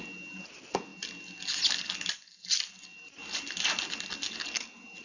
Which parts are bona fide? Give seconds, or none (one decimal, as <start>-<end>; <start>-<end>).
0.0-5.0